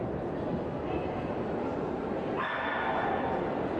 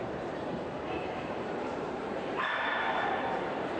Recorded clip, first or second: first